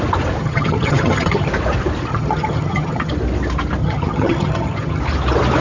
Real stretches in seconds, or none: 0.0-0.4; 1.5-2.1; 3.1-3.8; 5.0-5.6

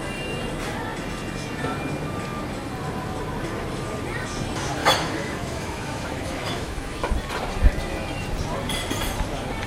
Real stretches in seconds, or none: 0.0-4.8; 7.1-9.7

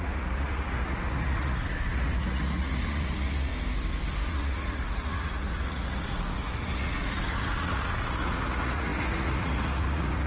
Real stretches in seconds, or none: 3.5-4.3

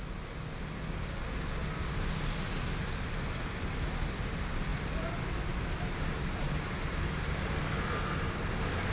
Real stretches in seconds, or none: 0.0-8.9

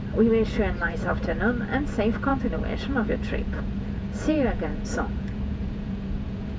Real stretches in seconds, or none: 0.0-0.8; 1.4-2.3

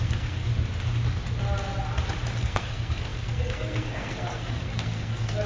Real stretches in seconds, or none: 0.5-2.4

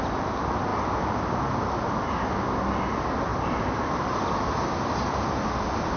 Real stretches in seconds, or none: 0.0-3.3; 4.0-6.0

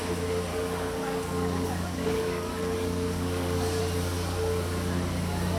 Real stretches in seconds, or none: 0.0-0.5; 3.8-5.6